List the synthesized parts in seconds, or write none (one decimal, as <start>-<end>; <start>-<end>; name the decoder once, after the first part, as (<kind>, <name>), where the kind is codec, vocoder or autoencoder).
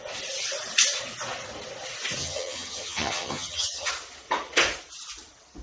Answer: 2.2-3.9 (vocoder, HiFi-GAN)